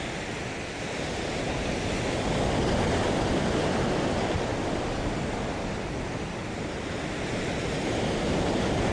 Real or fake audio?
real